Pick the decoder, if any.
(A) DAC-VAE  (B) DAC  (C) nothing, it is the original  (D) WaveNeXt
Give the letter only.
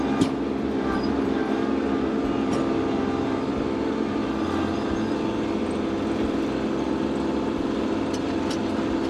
C